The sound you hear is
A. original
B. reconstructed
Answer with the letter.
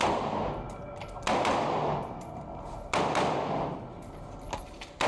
A